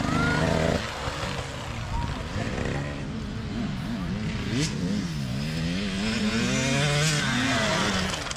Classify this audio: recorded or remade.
recorded